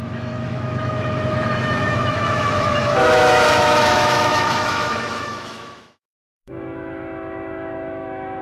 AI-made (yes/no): yes